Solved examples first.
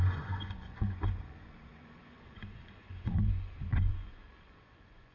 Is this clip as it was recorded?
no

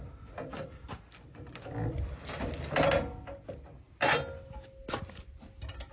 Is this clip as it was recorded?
yes